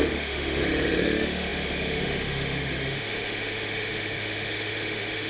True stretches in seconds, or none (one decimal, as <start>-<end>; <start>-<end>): none